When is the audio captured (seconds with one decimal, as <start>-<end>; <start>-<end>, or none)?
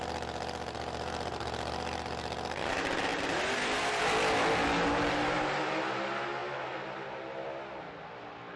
0.0-3.1; 4.0-8.6